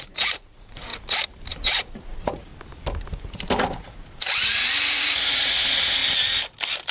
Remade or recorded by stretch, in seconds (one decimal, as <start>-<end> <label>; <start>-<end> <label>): 0.0-0.9 remade; 0.9-1.5 recorded; 1.5-2.5 remade; 2.5-3.8 recorded; 3.8-6.0 remade; 6.0-6.9 recorded